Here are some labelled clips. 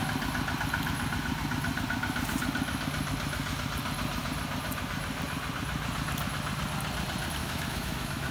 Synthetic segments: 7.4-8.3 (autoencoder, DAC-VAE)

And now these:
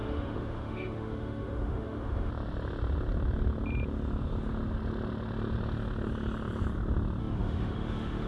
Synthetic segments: 0.0-2.3 (autoencoder, DAC-VAE); 7.2-8.3

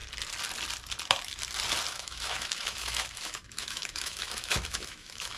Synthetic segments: 1.9-5.4 (autoencoder, DAC-VAE)

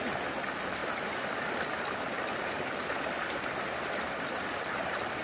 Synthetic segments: none

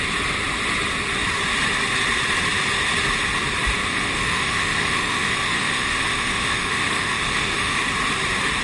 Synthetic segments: 3.9-7.8 (autoencoder, DAC-VAE)

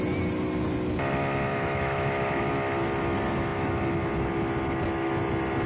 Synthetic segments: 1.5-2.5 (autoencoder, DAC-VAE)